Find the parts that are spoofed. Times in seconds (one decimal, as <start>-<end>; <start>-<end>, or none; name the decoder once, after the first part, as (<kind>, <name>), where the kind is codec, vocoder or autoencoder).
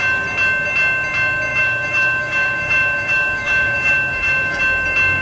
1.5-4.6 (autoencoder, DAC-VAE)